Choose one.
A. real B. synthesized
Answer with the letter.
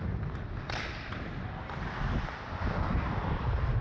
A